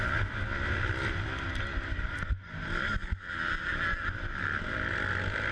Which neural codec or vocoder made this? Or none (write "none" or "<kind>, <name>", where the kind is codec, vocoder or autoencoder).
none